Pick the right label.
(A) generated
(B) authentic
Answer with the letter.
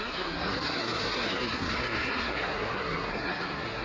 A